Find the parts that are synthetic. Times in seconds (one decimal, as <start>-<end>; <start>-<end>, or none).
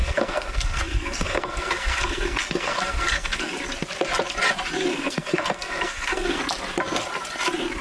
0.0-3.5; 4.9-6.4